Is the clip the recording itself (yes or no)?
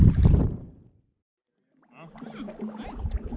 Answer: yes